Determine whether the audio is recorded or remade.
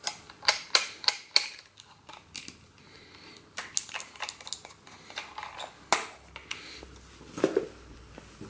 recorded